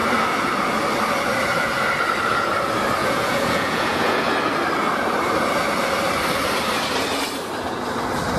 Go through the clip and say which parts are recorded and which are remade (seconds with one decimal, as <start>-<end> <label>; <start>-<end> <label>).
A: 0.0-3.0 recorded; 3.0-4.3 remade; 4.3-8.4 recorded